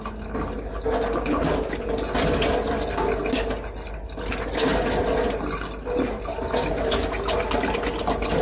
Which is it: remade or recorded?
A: recorded